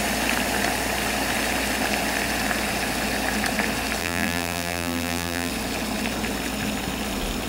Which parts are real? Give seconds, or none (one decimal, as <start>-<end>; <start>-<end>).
0.0-4.0; 5.5-7.5

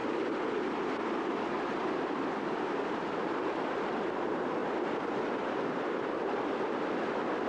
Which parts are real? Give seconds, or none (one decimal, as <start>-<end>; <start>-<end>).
0.0-7.5

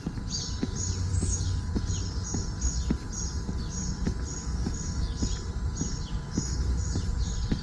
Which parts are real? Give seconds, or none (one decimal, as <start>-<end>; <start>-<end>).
0.0-1.1; 1.7-4.4; 5.2-7.6

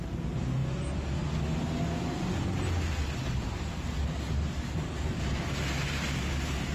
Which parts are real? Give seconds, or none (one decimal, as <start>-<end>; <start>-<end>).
0.0-6.7

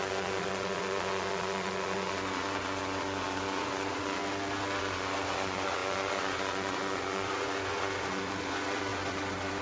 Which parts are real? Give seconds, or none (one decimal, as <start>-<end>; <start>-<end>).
4.2-4.8

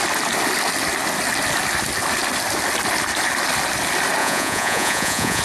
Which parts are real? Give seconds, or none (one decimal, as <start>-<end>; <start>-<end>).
0.0-4.2

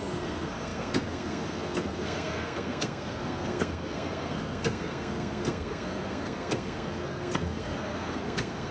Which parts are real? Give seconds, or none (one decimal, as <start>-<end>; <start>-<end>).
none

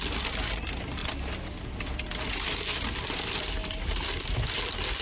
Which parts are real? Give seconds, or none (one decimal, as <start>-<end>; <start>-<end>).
0.0-5.0